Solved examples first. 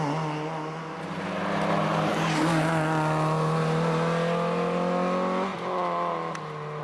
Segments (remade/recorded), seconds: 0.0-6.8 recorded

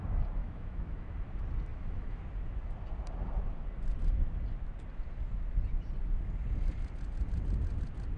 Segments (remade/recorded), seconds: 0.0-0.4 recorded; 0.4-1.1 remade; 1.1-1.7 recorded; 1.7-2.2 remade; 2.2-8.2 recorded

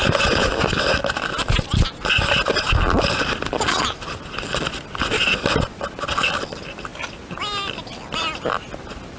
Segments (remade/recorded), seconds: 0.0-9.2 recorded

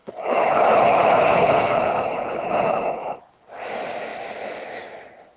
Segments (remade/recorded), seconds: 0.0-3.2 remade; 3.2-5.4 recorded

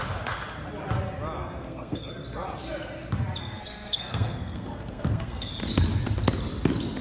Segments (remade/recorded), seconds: 0.0-1.4 recorded; 1.4-2.1 remade; 2.1-3.4 recorded; 3.4-5.5 remade; 5.5-7.0 recorded

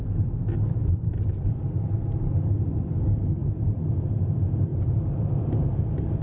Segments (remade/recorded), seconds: 0.0-0.8 recorded; 0.8-2.8 remade; 2.8-4.7 recorded; 4.7-5.8 remade; 5.8-6.2 recorded

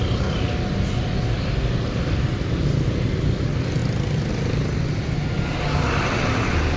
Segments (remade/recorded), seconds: 0.0-6.8 recorded

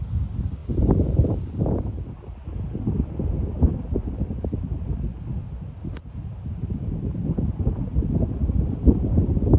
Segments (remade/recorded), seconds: 0.0-9.6 recorded